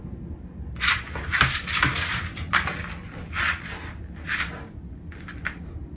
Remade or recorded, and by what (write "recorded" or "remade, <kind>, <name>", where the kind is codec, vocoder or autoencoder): recorded